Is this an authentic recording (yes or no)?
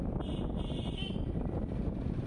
yes